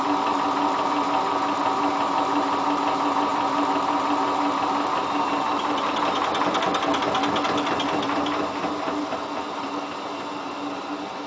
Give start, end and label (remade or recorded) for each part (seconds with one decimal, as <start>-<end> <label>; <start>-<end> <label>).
0.0-11.3 recorded